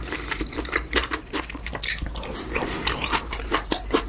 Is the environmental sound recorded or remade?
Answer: remade